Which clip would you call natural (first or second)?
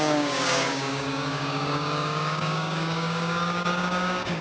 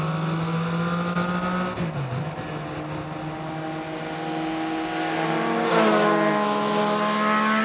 second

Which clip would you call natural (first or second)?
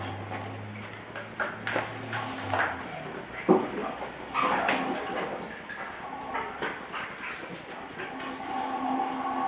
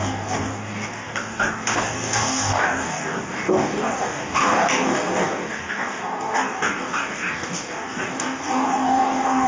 first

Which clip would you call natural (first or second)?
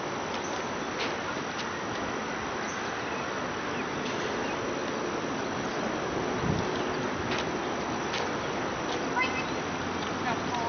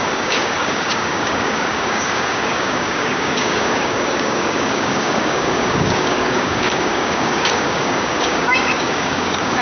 first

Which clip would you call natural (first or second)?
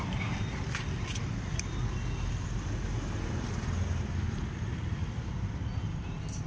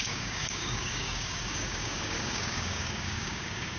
first